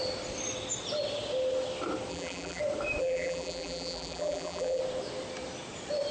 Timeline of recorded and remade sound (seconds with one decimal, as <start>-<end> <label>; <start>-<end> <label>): 0.0-2.1 recorded; 2.1-2.6 remade; 2.6-3.0 recorded; 3.0-4.8 remade; 4.8-6.1 recorded